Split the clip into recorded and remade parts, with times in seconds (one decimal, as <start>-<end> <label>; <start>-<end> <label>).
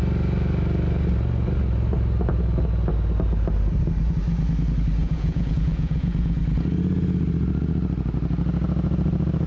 0.0-5.0 recorded; 5.0-6.4 remade; 6.4-9.5 recorded